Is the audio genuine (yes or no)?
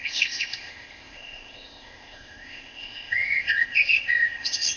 no